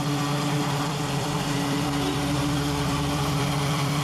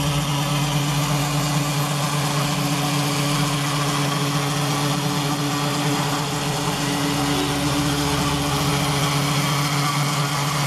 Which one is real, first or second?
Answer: second